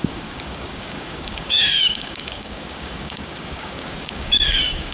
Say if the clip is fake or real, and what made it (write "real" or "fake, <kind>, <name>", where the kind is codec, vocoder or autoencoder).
fake, codec, DAC